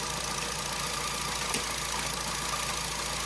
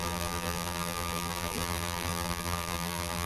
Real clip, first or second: first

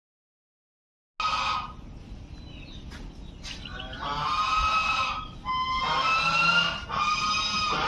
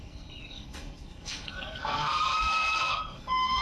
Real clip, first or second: first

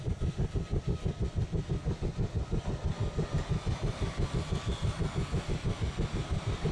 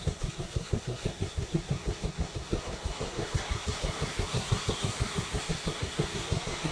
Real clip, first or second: first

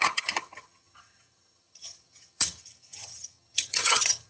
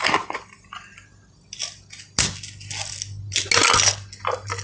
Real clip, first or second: second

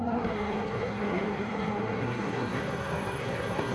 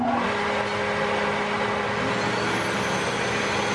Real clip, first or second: second